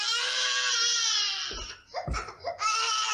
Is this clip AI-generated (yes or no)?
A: no